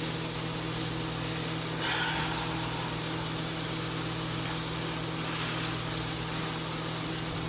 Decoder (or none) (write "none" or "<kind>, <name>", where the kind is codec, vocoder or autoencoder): none